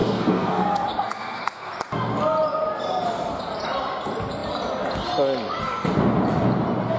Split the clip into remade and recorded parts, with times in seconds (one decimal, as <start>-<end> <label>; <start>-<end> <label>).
0.0-1.7 remade; 1.7-7.0 recorded